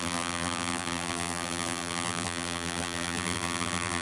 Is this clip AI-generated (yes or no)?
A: yes